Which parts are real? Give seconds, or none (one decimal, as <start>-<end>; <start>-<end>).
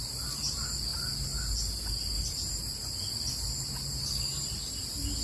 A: 0.0-5.2